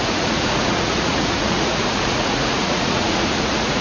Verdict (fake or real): fake